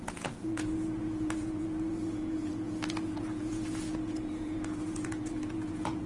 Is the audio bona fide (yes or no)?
no